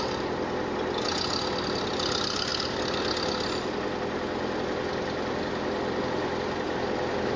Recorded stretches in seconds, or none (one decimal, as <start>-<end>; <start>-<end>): 0.0-7.4

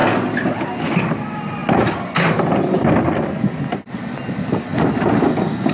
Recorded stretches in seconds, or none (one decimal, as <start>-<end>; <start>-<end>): 0.0-5.7